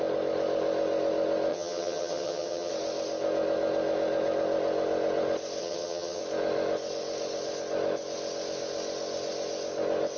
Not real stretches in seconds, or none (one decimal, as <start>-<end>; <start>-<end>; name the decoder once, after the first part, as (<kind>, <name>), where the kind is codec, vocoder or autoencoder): 1.5-2.7 (vocoder, HiFi-GAN); 5.6-6.2